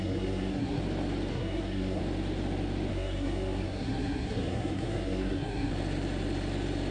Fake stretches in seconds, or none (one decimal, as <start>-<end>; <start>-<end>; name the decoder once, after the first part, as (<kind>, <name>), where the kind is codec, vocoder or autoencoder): 0.0-0.8 (codec, SNAC); 1.3-2.0; 2.9-5.7